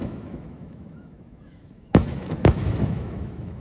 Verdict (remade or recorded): remade